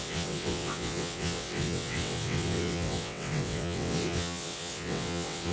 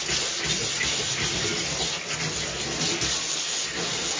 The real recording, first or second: second